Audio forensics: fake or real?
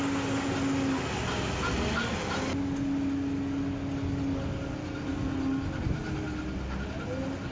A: real